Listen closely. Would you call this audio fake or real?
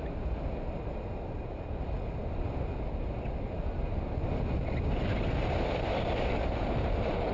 real